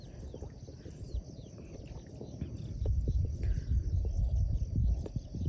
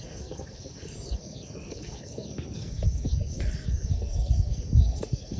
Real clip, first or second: first